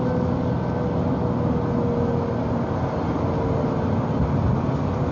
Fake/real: real